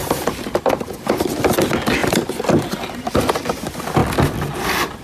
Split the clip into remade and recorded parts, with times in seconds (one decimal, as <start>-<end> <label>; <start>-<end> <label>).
0.0-0.7 remade; 0.7-2.0 recorded; 2.0-3.3 remade; 3.3-5.0 recorded